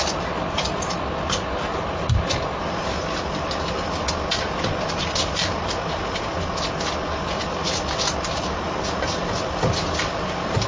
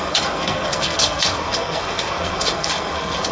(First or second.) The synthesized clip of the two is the second